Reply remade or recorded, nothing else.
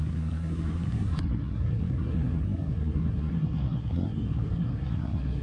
remade